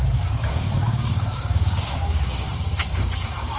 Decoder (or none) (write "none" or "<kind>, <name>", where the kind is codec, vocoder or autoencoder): codec, DAC